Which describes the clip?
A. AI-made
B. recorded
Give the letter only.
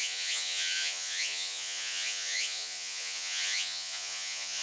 A